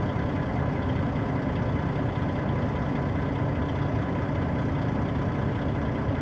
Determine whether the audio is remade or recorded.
recorded